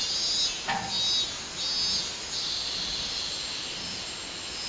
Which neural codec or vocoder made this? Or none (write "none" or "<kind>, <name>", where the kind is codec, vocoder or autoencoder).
none